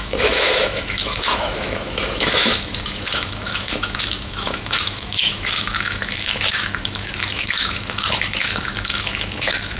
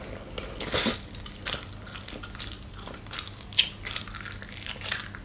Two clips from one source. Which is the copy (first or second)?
first